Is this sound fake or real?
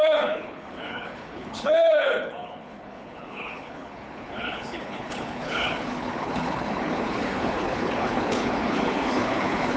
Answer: fake